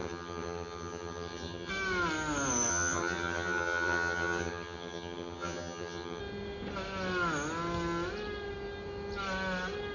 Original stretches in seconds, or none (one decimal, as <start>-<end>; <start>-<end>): 1.7-2.7; 6.2-9.9